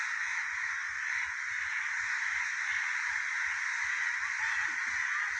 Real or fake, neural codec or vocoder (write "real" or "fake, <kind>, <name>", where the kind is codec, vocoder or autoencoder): real